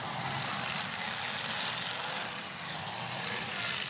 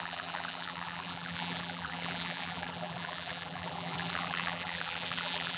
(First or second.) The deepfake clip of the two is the second